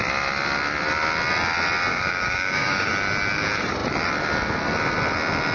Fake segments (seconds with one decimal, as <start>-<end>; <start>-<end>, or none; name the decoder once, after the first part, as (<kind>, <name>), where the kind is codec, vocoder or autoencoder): 1.9-2.9 (codec, DAC)